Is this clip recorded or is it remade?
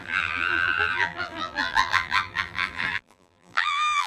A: remade